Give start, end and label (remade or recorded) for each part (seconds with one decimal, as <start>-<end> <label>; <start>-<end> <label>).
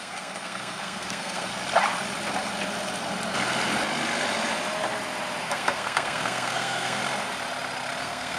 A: 0.0-1.5 remade; 1.5-5.4 recorded; 5.4-7.0 remade; 7.0-8.0 recorded; 8.0-8.4 remade